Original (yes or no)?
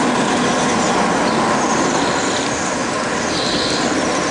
yes